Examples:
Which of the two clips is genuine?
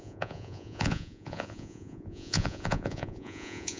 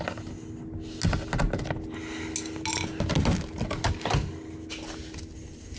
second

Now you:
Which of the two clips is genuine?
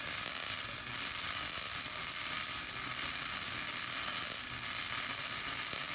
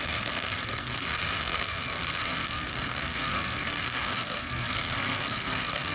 first